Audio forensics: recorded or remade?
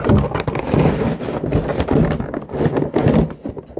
recorded